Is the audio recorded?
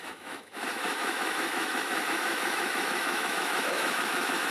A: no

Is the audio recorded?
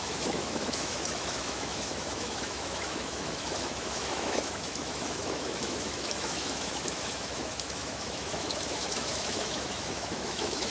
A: no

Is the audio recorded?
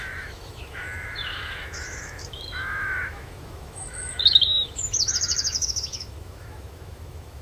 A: no